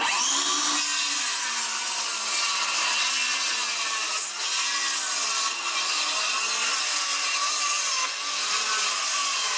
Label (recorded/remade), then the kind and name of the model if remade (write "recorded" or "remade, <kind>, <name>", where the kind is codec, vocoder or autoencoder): recorded